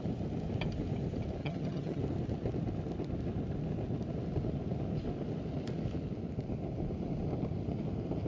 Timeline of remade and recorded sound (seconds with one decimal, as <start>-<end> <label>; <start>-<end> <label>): 0.0-1.4 recorded; 1.4-2.0 remade; 2.0-8.3 recorded